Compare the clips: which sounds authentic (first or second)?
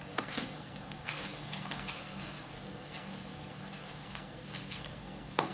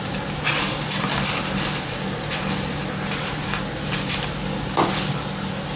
second